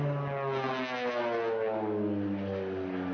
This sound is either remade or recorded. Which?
recorded